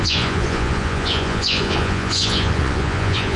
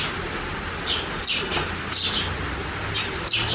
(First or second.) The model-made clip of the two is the first